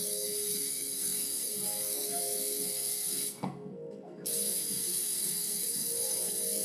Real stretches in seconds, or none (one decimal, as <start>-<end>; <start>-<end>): none